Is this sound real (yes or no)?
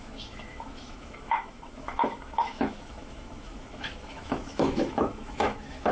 no